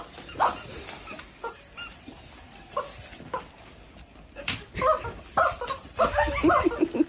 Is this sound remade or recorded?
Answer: recorded